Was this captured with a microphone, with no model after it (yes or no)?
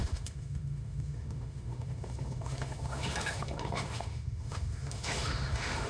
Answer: no